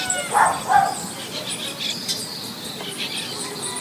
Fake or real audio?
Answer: real